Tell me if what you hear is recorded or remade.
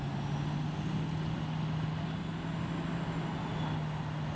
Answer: recorded